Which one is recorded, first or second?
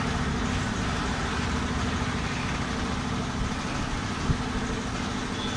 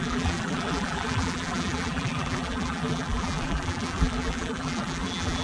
first